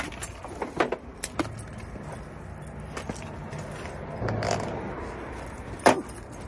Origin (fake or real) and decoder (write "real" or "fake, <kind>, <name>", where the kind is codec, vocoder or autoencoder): real